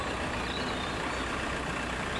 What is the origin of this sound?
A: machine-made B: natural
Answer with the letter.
B